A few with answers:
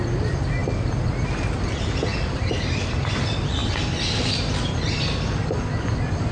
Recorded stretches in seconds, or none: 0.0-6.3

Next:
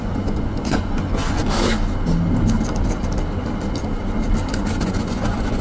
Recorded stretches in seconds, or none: 1.4-4.8

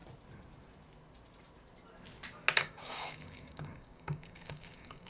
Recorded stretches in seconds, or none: 0.0-2.6

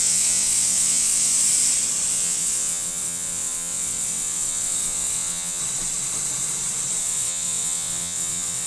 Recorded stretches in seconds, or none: 1.3-2.1; 5.6-7.0

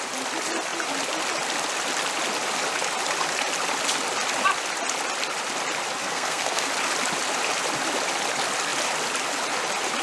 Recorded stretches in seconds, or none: 0.0-6.0; 6.7-10.0

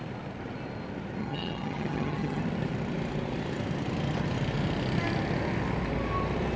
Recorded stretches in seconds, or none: 0.0-1.2; 2.4-6.6

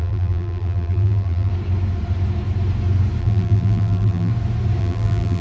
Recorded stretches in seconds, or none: 1.5-3.2; 4.3-4.8

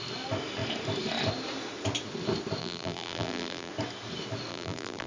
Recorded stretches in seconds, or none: 0.0-2.6; 3.7-4.5